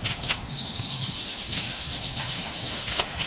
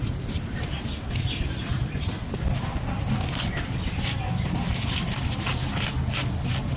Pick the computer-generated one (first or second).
first